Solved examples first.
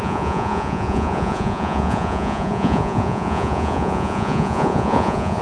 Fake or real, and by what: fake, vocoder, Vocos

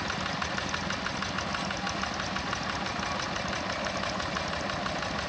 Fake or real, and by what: real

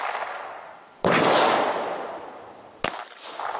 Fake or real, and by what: real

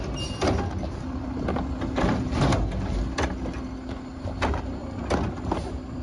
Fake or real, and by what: real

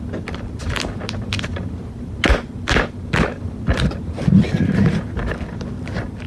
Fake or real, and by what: fake, vocoder, BigVGAN v2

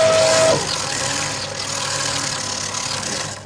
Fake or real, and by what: real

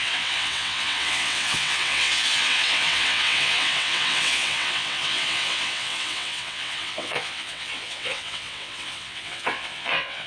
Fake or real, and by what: fake, vocoder, WaveNeXt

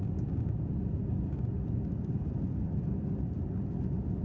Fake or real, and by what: real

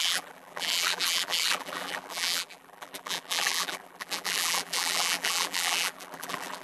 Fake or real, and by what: fake, vocoder, BigVGAN v2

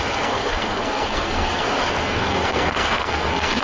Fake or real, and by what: fake, codec, SNAC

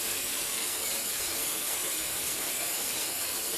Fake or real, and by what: fake, codec, SNAC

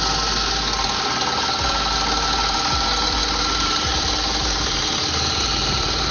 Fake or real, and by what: real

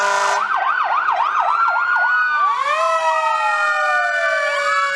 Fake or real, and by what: real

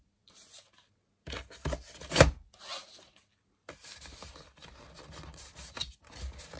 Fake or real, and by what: real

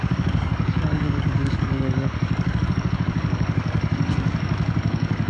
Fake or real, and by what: fake, codec, DAC